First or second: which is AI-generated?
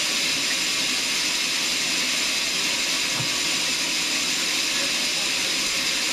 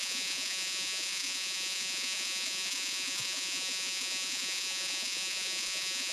second